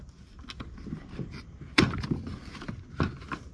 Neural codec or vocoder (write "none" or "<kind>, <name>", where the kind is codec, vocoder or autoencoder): none